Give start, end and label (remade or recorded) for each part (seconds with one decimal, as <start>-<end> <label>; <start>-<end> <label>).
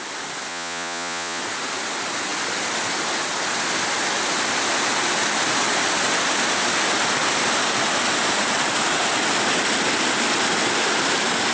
0.0-0.5 recorded; 0.5-1.4 remade; 1.4-11.5 recorded